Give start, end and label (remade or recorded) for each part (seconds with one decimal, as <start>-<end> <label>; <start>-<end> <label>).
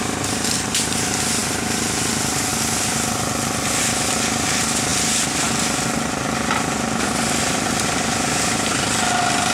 0.0-9.5 recorded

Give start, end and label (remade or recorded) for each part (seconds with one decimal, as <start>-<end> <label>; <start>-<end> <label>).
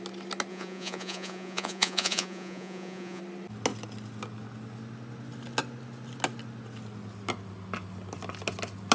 0.0-0.5 recorded; 0.5-3.2 remade; 3.2-8.9 recorded